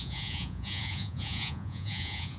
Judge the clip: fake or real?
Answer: fake